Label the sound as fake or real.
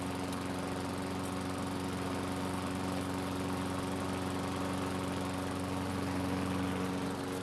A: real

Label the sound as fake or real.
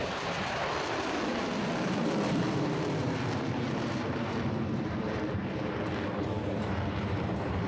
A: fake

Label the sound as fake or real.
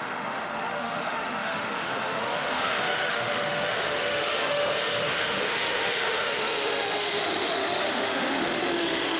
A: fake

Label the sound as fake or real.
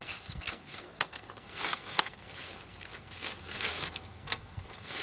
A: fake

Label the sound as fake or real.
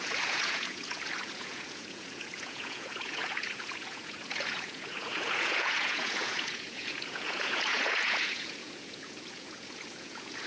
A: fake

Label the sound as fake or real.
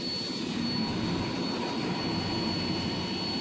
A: real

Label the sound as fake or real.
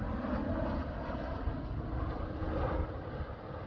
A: real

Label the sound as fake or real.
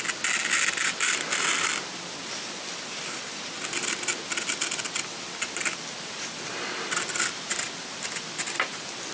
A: real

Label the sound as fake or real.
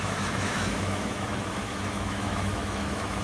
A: fake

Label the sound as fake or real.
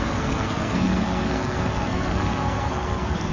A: fake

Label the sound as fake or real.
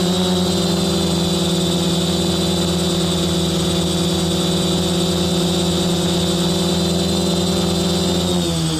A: real